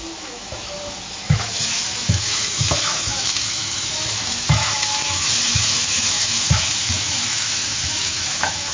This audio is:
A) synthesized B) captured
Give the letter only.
A